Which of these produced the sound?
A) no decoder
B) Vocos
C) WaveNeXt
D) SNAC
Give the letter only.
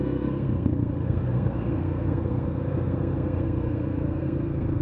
D